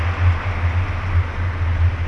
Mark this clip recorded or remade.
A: recorded